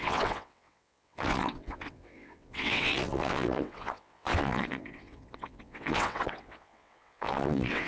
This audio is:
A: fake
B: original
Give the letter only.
A